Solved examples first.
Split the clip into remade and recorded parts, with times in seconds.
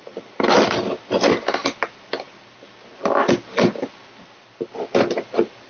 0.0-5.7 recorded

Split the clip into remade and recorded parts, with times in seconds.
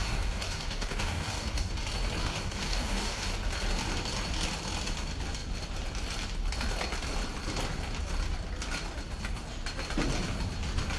0.0-1.7 remade; 1.7-2.2 recorded; 2.2-3.3 remade; 3.3-11.0 recorded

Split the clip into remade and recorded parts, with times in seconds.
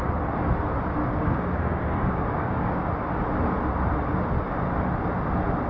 0.0-1.0 recorded; 1.0-2.9 remade; 2.9-5.7 recorded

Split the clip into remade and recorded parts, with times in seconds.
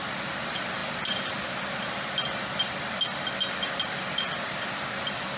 0.0-5.4 recorded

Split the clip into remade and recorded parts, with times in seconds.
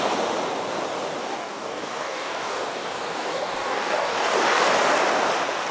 0.0-1.2 recorded; 1.2-4.6 remade; 4.6-5.7 recorded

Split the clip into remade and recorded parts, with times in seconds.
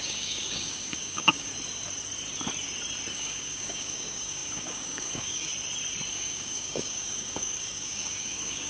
0.0-1.5 remade; 1.5-3.1 recorded; 3.1-5.5 remade; 5.5-6.1 recorded; 6.1-8.7 remade